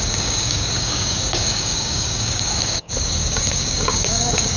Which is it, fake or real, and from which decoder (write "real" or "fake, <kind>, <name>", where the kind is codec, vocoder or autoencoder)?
fake, codec, DAC